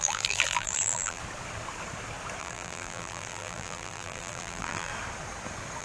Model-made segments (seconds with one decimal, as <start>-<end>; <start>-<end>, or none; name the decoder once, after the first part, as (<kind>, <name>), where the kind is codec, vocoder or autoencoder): 0.0-1.2 (vocoder, BigVGAN v2); 2.4-4.9